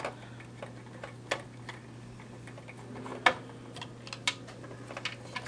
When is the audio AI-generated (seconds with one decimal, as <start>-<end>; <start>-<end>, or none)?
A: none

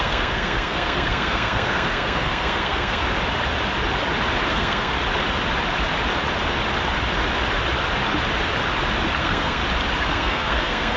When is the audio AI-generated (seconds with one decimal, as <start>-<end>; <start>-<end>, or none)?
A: 0.0-3.0; 4.5-4.9; 9.2-9.6; 10.1-11.0

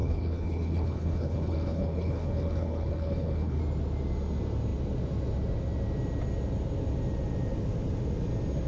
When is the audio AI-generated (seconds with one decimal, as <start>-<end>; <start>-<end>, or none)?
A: 0.0-3.6

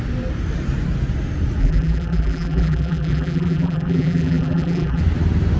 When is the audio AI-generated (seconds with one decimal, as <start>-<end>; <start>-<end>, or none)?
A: 1.6-5.0